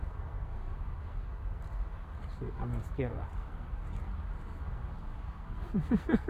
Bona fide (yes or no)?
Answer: no